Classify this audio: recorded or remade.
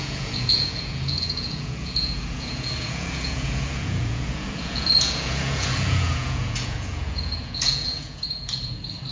remade